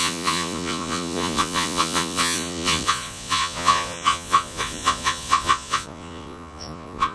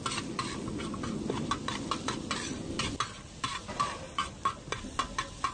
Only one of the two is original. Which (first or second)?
second